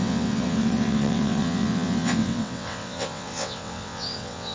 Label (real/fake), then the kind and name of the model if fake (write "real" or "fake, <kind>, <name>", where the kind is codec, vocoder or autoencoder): fake, vocoder, WaveNeXt